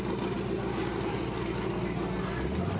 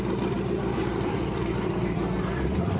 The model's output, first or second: second